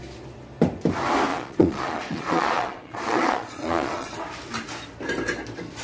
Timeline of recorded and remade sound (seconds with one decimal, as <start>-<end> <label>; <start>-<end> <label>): 0.0-1.3 recorded; 1.3-4.1 remade; 4.1-5.8 recorded